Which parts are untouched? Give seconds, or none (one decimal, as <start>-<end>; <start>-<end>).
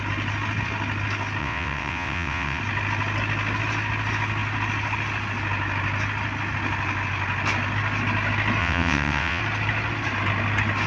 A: 0.0-1.4; 2.6-8.6; 9.4-10.9